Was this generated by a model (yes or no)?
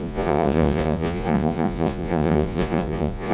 yes